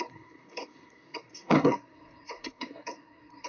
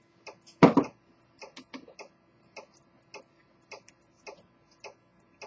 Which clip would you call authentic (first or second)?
second